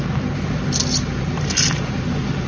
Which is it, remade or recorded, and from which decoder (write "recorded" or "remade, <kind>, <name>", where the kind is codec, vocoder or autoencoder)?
recorded